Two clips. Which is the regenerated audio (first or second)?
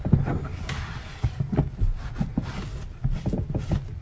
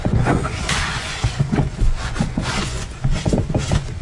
second